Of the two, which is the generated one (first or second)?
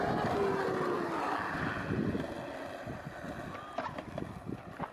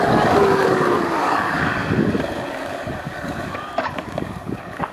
second